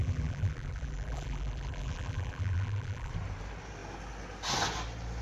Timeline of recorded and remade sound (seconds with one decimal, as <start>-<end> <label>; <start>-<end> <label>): 0.0-3.1 remade; 3.1-5.2 recorded